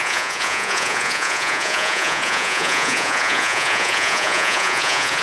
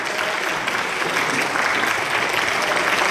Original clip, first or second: second